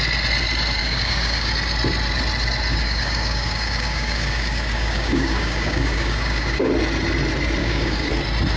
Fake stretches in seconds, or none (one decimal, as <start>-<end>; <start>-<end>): 0.8-1.5; 2.7-6.7; 7.6-8.1